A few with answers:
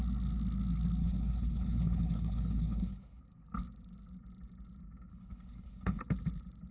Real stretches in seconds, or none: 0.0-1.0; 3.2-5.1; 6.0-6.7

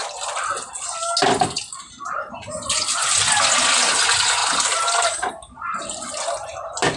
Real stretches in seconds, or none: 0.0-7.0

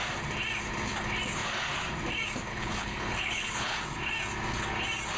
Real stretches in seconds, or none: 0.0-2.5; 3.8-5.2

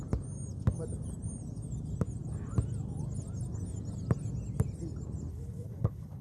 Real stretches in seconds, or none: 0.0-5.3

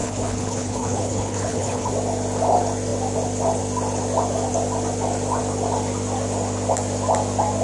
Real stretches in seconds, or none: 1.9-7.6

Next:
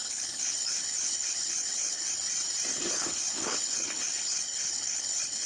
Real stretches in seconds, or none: 2.1-2.7

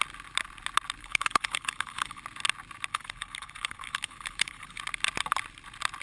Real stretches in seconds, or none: 0.0-1.0; 2.2-2.9; 4.8-6.0